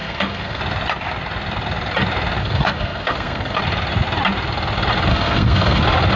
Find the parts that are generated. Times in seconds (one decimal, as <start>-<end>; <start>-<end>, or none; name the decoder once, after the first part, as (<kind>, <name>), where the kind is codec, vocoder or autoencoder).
0.0-0.6 (codec, SNAC); 2.4-3.6; 5.1-5.8